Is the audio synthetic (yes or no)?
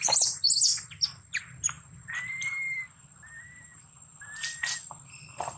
yes